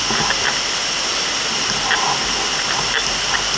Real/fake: real